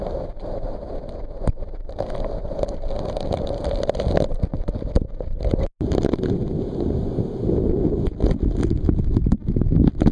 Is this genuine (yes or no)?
yes